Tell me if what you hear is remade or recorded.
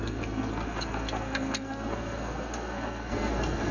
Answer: remade